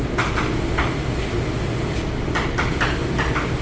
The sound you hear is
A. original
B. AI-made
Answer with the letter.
A